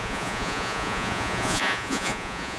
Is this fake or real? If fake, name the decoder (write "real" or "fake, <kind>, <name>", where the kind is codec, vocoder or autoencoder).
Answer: fake, vocoder, Vocos